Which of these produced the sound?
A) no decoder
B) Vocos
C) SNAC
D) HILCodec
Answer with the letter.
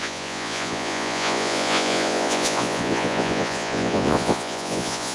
B